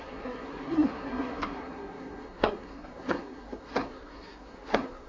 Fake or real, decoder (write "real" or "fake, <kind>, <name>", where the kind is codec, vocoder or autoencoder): fake, codec, SNAC